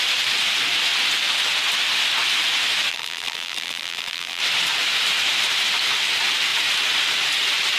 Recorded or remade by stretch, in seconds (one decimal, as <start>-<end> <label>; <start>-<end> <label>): 0.0-2.9 recorded; 2.9-4.4 remade; 4.4-7.8 recorded